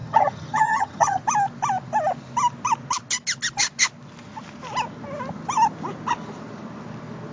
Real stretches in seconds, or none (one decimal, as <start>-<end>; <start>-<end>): 1.2-7.3